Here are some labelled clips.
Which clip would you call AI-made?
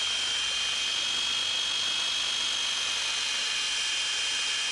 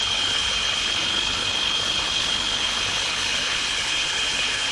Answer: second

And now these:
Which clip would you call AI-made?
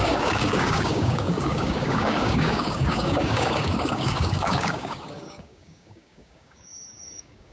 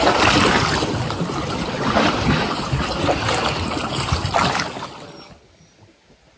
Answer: first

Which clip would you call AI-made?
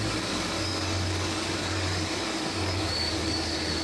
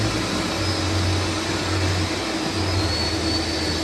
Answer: first